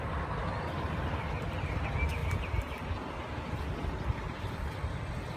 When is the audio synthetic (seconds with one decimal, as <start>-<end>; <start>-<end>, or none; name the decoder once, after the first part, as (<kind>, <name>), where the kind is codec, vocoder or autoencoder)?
0.7-1.3 (vocoder, BigVGAN v2)